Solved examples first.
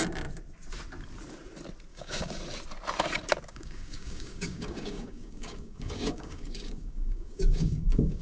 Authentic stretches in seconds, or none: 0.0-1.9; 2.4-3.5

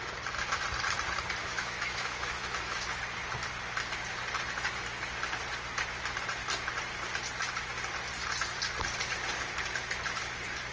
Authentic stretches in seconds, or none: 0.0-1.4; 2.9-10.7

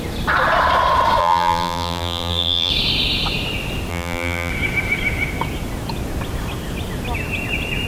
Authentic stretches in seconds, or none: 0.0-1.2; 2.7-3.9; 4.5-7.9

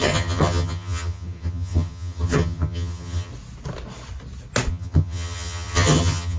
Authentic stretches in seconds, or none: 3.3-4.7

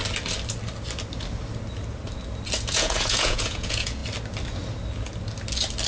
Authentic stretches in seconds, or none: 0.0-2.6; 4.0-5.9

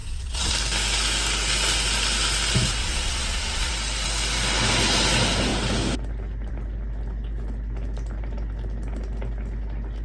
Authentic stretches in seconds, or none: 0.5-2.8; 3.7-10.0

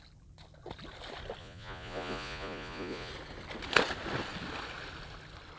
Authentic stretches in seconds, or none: 0.0-1.4; 3.1-5.6